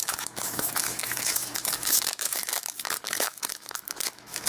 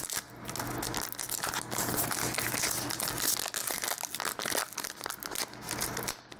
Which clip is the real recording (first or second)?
second